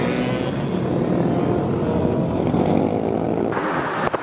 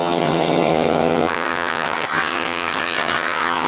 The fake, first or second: second